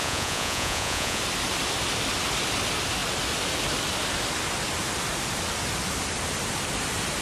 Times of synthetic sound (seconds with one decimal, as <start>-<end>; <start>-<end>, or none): 0.0-1.2